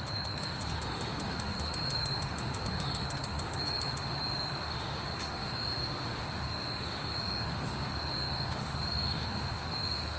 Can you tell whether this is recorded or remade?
remade